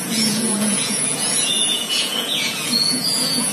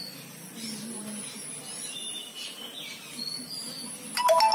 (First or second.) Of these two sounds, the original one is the second